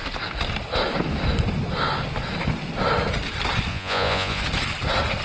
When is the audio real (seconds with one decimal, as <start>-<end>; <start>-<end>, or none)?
0.0-3.7; 4.4-5.2